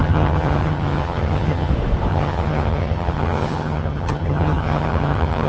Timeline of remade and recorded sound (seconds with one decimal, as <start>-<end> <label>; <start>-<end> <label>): 0.0-1.7 remade; 1.7-2.1 recorded; 2.1-5.5 remade